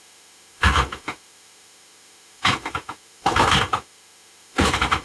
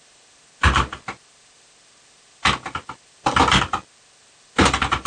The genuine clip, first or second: second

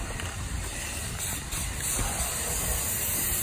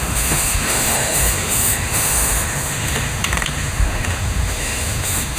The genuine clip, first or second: first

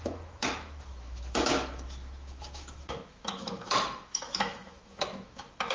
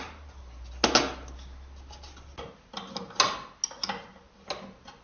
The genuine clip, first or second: second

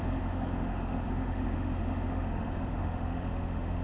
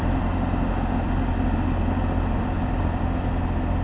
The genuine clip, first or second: second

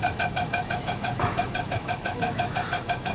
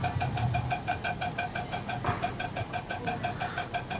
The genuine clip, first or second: second